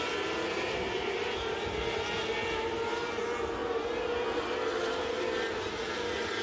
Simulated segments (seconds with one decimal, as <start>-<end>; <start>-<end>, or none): none